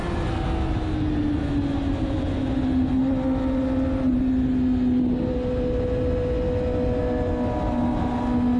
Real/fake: real